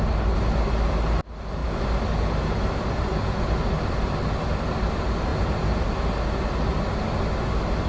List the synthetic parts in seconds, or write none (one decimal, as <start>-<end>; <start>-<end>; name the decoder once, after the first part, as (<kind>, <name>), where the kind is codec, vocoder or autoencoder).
none